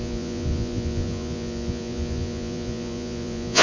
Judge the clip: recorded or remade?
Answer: remade